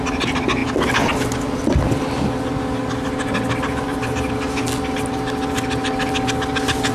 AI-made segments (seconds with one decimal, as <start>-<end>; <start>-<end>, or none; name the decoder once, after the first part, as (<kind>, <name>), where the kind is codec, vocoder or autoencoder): none